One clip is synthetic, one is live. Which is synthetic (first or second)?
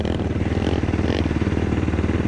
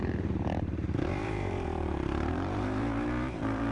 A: second